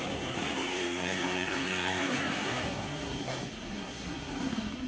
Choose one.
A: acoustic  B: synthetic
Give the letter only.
B